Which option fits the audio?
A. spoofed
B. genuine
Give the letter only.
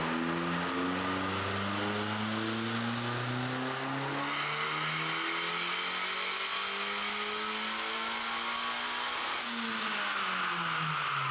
B